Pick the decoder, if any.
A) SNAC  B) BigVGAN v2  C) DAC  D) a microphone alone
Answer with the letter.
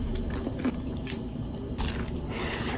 D